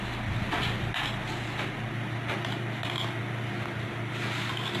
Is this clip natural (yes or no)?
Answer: yes